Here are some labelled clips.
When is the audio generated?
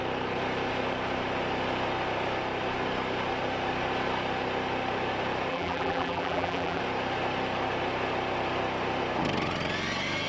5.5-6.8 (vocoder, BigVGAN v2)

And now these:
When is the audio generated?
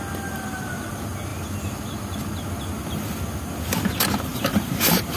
4.3-5.2 (vocoder, BigVGAN v2)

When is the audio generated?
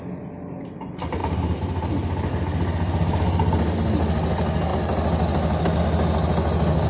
1.2-2.3 (vocoder, BigVGAN v2)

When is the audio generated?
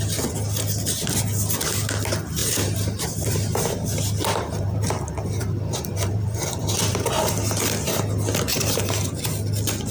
2.4-7.3 (vocoder, BigVGAN v2); 8.5-9.2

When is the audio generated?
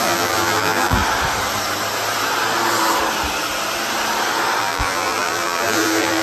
0.0-1.0 (vocoder, BigVGAN v2); 4.6-6.2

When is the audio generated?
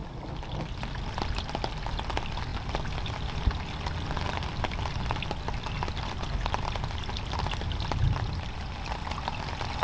none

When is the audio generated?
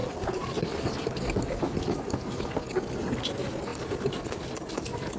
none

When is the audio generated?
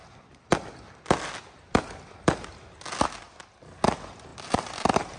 4.3-5.2 (vocoder, BigVGAN v2)